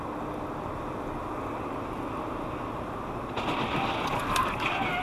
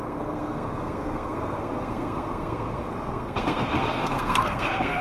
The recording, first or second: first